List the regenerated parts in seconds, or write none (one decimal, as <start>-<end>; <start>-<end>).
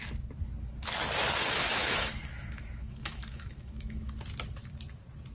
1.6-4.1